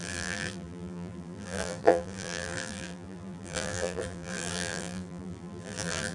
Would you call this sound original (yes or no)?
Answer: no